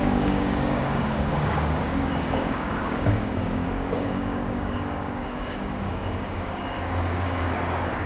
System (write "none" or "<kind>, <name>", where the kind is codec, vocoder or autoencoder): codec, DAC